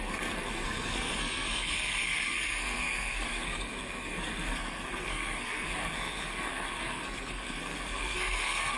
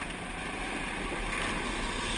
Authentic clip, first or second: second